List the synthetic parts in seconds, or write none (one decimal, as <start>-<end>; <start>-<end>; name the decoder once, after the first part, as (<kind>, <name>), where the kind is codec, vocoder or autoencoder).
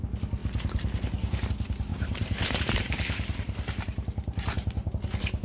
1.9-4.9 (vocoder, BigVGAN v2)